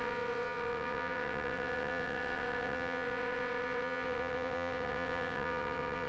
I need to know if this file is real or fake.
fake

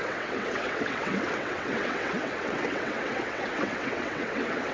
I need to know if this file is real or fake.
fake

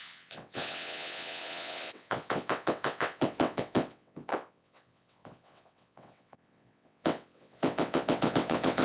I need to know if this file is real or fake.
fake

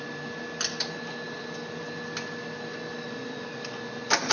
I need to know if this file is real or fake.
real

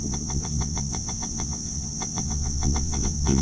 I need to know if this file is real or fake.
fake